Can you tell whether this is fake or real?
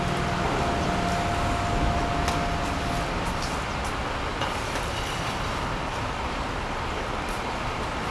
real